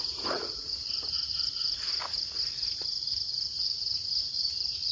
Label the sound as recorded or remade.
remade